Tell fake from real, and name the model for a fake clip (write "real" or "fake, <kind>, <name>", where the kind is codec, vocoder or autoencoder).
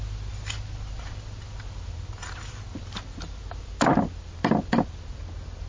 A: real